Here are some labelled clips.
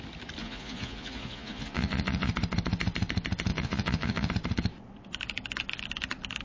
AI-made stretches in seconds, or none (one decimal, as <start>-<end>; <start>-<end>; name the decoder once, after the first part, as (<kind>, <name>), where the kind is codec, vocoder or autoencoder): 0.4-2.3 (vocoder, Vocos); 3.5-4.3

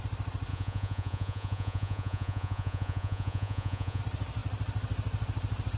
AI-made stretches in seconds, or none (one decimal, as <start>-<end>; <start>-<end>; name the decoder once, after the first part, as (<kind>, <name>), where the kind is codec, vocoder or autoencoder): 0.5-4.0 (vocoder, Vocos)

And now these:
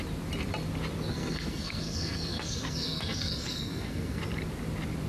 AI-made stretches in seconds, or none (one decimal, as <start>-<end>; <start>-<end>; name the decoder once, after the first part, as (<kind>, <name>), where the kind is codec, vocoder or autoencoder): 1.1-4.2 (codec, SNAC)

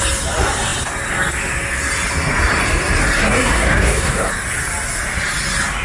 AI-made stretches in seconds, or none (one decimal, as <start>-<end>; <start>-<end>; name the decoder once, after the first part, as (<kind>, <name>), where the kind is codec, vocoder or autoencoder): 3.2-4.3 (codec, SNAC)

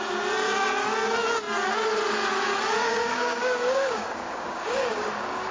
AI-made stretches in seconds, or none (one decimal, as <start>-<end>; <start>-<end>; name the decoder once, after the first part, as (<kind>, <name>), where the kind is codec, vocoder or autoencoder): 2.8-5.5 (codec, DAC)

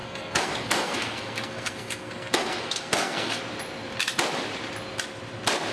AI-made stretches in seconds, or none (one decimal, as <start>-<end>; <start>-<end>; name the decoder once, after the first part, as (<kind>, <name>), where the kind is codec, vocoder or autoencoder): 0.0-3.4 (codec, SNAC)

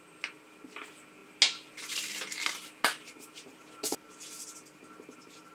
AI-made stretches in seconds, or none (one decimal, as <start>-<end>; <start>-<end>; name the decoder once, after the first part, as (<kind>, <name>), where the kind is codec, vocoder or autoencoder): none

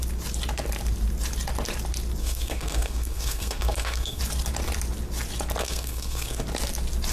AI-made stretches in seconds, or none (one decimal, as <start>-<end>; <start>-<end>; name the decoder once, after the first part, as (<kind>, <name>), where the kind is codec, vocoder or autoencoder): 2.2-4.2 (codec, SNAC); 5.6-6.4